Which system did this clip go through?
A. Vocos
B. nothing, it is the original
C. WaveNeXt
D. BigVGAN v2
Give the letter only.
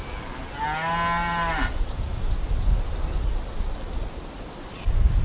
B